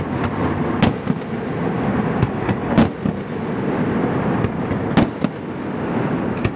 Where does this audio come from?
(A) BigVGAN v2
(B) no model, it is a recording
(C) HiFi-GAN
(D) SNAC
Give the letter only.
B